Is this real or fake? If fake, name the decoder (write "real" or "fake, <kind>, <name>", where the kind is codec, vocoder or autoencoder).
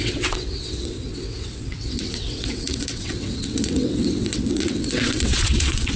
fake, vocoder, WaveNeXt